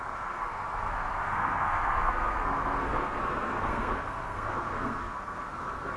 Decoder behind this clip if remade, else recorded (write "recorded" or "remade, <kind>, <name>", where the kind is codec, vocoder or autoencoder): remade, codec, SNAC